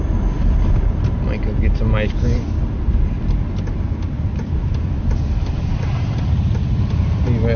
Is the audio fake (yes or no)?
no